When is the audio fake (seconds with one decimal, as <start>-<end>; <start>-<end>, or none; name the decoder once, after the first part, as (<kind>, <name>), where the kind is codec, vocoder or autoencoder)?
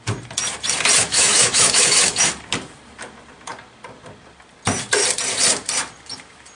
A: 1.0-2.3 (autoencoder, DAC-VAE)